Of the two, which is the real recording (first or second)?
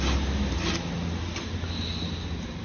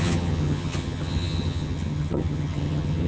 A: first